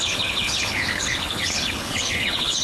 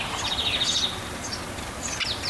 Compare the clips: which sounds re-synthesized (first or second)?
first